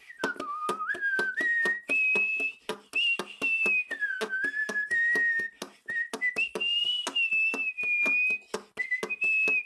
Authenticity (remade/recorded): recorded